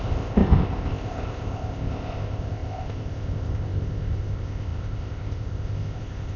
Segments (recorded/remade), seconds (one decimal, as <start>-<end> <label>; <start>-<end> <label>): 0.0-6.4 remade